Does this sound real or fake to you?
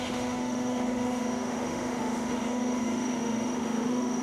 fake